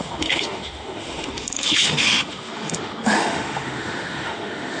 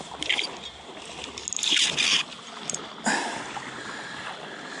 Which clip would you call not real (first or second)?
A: first